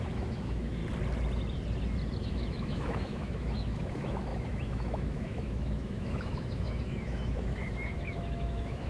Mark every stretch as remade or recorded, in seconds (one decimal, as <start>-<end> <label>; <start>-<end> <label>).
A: 0.0-0.8 remade; 0.8-2.2 recorded; 2.2-8.9 remade

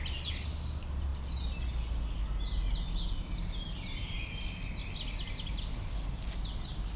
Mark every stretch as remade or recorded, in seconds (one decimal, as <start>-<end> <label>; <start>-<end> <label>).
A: 0.0-7.0 recorded

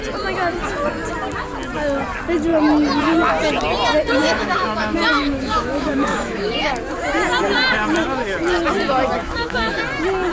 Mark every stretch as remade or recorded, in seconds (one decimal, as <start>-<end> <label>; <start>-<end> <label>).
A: 0.0-4.2 recorded; 4.2-6.7 remade; 6.7-9.2 recorded; 9.2-9.8 remade; 9.8-10.3 recorded